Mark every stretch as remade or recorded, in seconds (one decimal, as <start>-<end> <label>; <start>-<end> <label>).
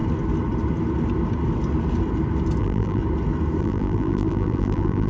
0.0-2.6 recorded; 2.6-3.0 remade; 3.0-3.6 recorded; 3.6-5.1 remade